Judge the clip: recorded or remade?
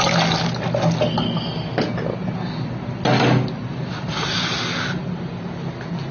recorded